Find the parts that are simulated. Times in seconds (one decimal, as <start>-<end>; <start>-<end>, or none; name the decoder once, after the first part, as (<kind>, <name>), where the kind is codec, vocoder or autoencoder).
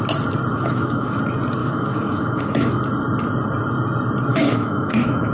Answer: 0.5-1.2 (autoencoder, DAC-VAE); 1.6-2.7; 4.3-5.3